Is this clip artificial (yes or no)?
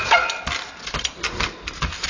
no